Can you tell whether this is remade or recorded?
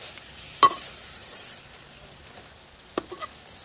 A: recorded